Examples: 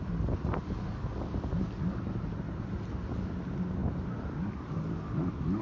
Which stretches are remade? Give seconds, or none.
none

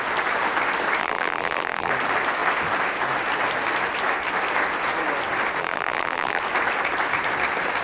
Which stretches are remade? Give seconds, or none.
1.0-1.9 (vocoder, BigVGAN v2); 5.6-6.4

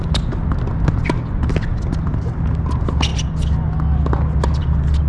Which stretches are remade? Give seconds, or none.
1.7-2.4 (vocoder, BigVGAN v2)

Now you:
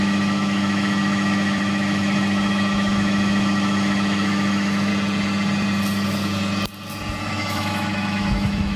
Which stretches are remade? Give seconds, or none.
0.0-4.9 (autoencoder, DAC-VAE); 7.2-8.8

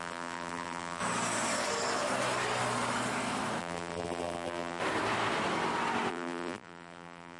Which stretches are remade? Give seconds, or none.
0.0-1.0 (vocoder, BigVGAN v2); 3.6-4.8; 6.1-7.4

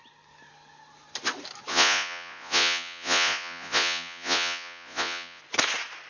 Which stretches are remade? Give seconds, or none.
1.7-5.4 (vocoder, Vocos)

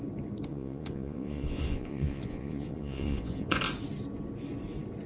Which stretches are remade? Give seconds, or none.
0.5-3.6 (vocoder, Vocos)

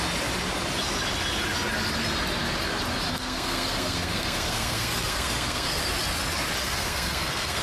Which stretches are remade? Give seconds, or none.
3.1-5.8 (codec, SNAC); 6.6-7.6